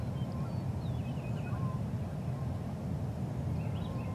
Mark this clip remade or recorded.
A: recorded